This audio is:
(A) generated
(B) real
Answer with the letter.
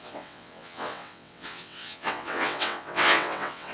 A